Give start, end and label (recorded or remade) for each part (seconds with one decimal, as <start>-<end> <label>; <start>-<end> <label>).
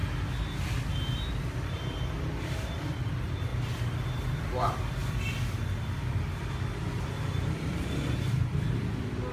0.0-0.9 recorded; 0.9-3.5 remade; 3.5-4.4 recorded; 4.4-5.0 remade; 5.0-6.1 recorded; 6.1-9.3 remade